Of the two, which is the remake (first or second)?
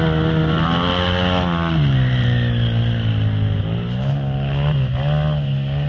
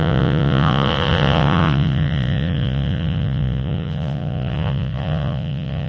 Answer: second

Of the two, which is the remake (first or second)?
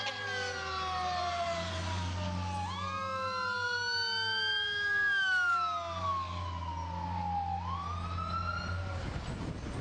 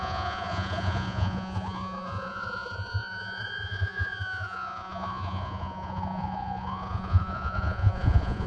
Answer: second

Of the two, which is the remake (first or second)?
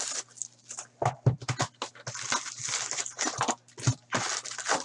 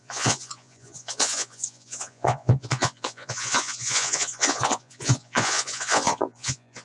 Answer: second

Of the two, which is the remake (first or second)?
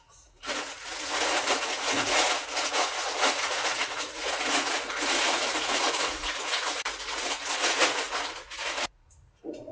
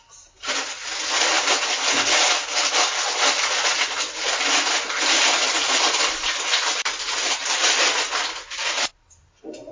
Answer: first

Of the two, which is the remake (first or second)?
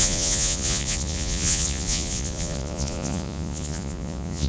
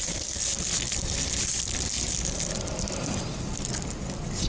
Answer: first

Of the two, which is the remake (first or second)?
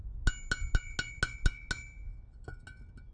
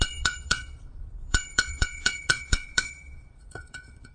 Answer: second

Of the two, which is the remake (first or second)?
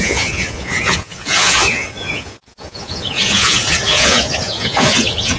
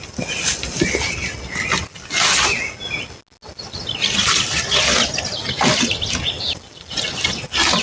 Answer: first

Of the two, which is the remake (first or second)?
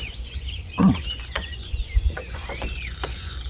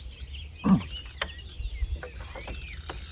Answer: first